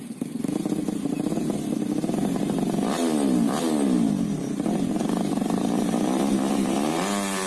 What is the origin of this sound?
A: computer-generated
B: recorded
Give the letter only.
B